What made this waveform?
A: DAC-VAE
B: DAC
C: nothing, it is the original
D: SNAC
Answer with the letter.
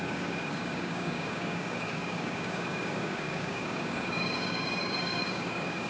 B